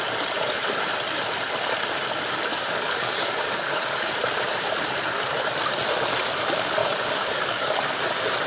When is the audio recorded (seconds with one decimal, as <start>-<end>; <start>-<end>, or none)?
0.0-2.5; 4.1-6.8; 7.8-8.5